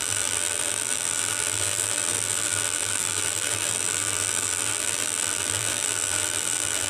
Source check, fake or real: fake